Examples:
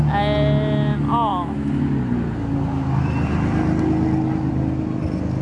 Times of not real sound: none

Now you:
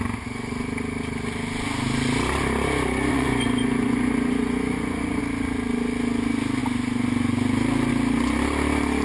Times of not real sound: 3.1-5.2 (vocoder, Vocos)